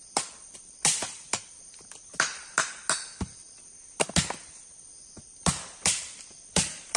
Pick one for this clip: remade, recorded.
recorded